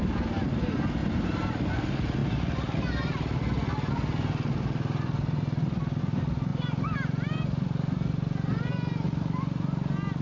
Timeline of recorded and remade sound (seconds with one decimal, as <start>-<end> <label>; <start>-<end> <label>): 0.0-1.0 recorded; 1.0-1.7 remade; 1.7-10.2 recorded

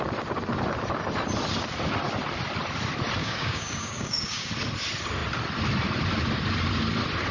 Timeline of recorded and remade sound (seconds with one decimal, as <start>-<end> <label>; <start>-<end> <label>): 0.0-3.2 recorded; 3.2-4.5 remade; 4.5-7.3 recorded